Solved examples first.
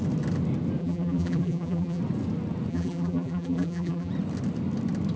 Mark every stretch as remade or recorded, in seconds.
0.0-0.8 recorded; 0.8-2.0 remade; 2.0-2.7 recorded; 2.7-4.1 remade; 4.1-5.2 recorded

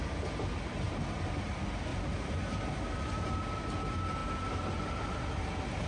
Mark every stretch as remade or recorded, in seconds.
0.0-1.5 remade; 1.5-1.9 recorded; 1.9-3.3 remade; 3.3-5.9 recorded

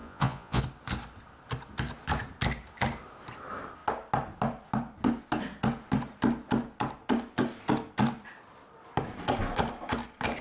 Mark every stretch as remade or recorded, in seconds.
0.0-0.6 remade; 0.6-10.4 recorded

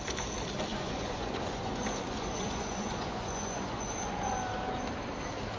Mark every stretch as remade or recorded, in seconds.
0.0-0.7 recorded; 0.7-4.1 remade; 4.1-5.6 recorded

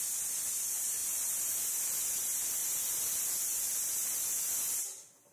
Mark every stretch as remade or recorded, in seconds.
0.0-5.3 recorded

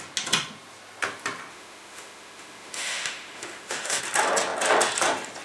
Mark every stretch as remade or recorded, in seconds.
0.0-1.5 recorded; 1.5-4.0 remade; 4.0-5.4 recorded